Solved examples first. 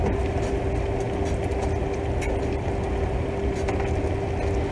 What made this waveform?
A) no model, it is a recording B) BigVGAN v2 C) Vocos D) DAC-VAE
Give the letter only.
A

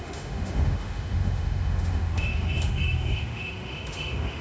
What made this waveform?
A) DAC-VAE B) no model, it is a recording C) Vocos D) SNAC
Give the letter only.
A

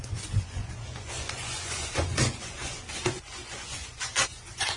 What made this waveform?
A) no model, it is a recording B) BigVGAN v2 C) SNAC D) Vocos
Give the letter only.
D